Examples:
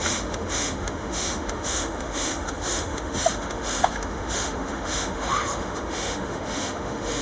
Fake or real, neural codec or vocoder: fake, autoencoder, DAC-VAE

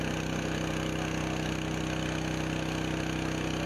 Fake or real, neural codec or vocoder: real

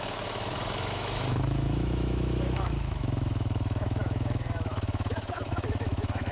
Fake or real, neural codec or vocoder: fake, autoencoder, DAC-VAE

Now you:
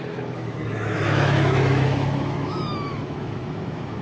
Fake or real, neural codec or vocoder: fake, autoencoder, DAC-VAE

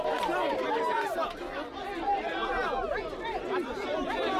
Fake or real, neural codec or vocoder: real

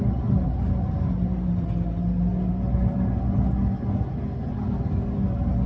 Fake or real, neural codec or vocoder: real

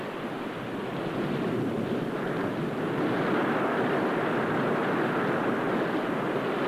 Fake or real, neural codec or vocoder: real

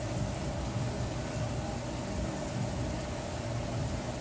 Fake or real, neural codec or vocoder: real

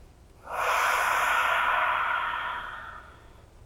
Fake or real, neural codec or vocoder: real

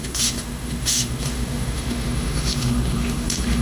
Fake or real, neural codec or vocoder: fake, autoencoder, DAC-VAE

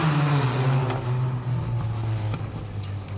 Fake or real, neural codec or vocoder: real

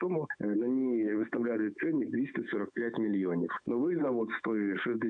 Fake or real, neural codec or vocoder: fake, autoencoder, DAC-VAE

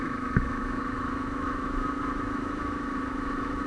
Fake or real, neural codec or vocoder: fake, autoencoder, DAC-VAE